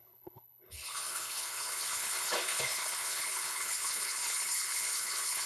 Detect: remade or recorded remade